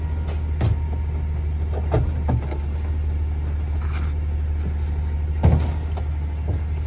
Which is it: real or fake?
real